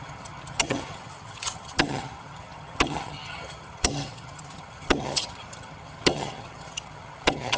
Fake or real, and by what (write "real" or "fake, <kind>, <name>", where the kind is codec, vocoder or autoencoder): fake, vocoder, HiFi-GAN